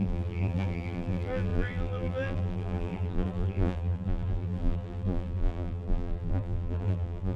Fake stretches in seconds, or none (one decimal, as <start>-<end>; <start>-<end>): 0.0-7.4